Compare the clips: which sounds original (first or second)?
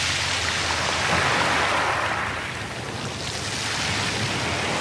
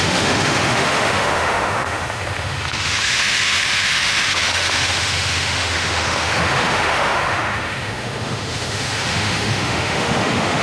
first